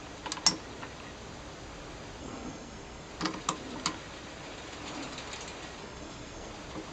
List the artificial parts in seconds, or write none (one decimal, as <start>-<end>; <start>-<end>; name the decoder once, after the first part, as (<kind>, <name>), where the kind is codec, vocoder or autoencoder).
2.2-3.1 (codec, SNAC); 5.8-6.5